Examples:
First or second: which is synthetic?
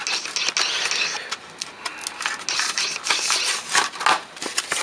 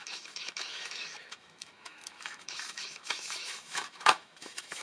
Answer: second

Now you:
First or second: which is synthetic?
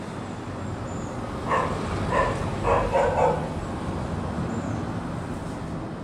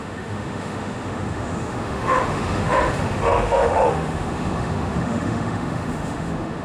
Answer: second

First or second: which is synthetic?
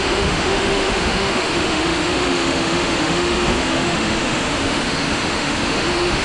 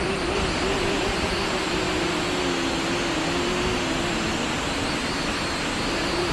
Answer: first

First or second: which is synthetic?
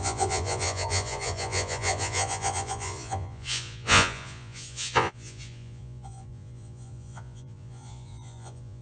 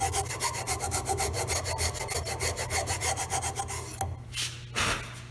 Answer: first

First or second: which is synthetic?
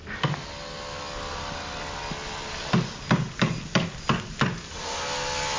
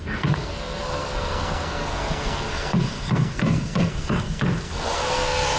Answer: second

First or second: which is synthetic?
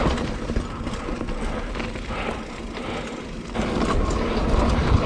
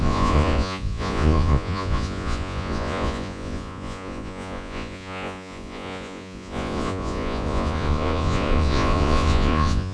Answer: second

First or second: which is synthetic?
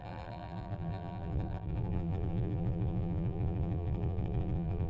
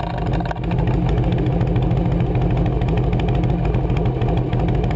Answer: first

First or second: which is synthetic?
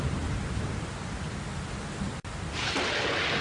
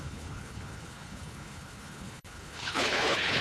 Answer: second